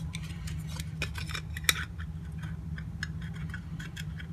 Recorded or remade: recorded